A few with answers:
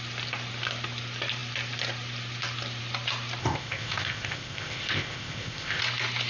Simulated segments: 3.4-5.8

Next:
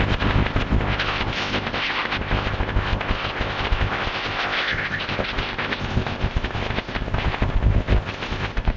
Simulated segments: 0.0-8.8